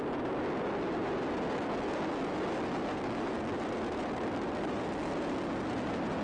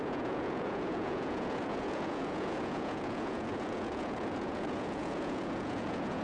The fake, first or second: second